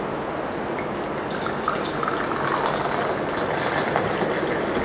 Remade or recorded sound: recorded